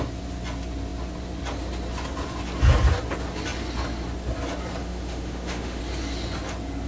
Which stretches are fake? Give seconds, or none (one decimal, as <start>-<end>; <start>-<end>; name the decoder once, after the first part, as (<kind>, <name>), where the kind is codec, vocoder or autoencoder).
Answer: 4.8-5.8 (autoencoder, DAC-VAE)